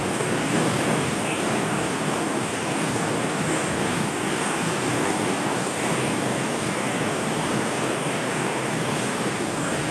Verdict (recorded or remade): remade